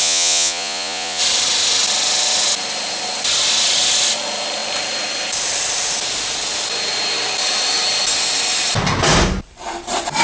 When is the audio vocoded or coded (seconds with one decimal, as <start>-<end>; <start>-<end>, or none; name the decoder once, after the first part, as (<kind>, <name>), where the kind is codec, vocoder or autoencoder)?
0.0-1.2 (vocoder, Vocos)